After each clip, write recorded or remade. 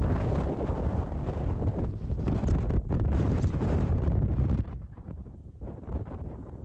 remade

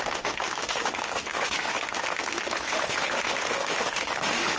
remade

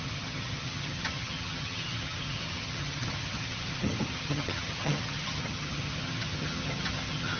remade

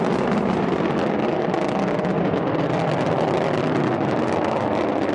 recorded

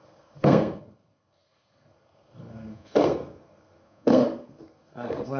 remade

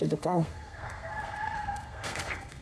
remade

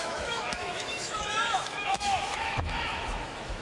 remade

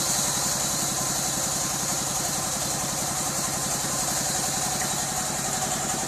remade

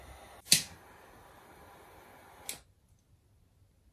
recorded